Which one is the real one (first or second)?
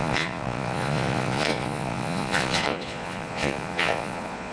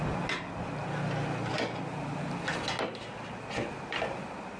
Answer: second